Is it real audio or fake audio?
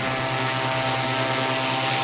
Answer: real